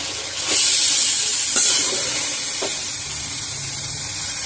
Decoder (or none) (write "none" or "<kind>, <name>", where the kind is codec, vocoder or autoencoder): none